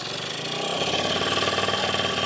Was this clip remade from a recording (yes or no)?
no